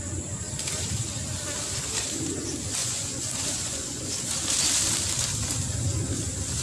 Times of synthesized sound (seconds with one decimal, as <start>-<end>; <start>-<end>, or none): 2.8-4.1